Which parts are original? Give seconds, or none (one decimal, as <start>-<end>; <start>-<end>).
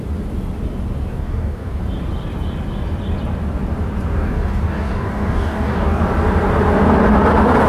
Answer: 0.0-1.1; 1.8-4.1; 6.0-7.7